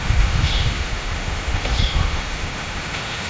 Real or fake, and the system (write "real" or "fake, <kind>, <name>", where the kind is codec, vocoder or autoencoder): fake, autoencoder, DAC-VAE